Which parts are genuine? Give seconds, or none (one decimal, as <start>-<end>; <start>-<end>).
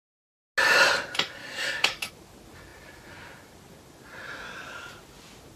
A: 0.0-1.4; 2.1-5.6